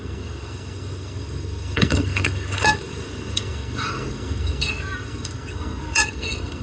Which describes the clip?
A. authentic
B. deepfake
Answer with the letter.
B